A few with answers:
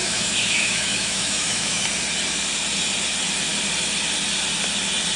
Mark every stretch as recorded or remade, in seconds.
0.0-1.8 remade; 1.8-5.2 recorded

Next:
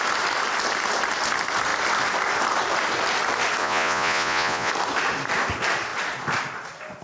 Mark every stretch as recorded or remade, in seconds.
0.0-3.6 recorded; 3.6-4.7 remade; 4.7-7.0 recorded

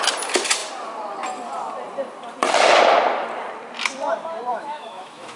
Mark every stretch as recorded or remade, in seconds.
0.0-4.5 recorded; 4.5-5.4 remade